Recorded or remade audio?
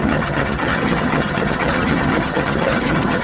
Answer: remade